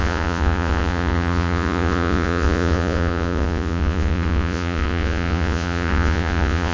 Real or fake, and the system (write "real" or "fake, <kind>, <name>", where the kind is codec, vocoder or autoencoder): fake, vocoder, Vocos